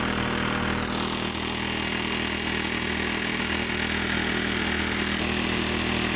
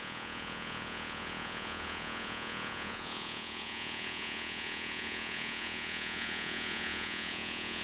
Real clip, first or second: first